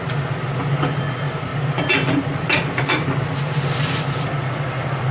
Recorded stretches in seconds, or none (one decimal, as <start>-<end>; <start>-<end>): 0.0-5.1